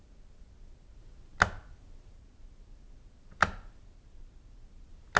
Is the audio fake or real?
real